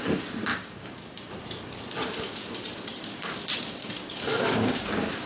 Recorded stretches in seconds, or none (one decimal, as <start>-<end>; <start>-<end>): 0.0-0.5; 1.3-3.0